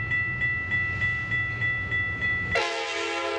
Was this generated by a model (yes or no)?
no